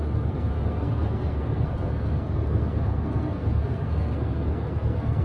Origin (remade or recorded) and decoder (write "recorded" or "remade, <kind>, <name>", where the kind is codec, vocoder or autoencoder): remade, codec, SNAC